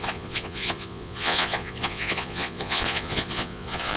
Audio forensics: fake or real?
fake